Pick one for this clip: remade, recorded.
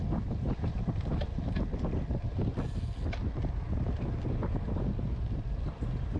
recorded